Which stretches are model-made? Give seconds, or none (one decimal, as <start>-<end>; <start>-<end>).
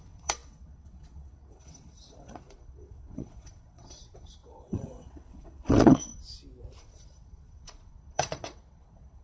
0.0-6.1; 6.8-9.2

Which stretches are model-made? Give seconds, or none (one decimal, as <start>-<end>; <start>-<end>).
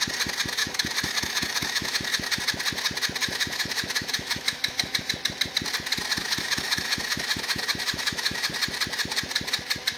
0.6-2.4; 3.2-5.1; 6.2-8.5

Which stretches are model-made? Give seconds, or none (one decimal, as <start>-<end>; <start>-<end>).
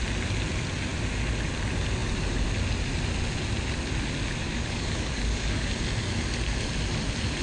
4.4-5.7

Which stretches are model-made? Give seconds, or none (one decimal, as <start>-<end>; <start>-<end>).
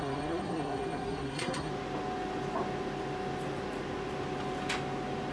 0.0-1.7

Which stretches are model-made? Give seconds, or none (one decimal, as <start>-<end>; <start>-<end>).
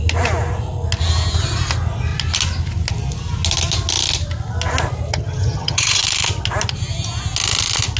5.1-6.0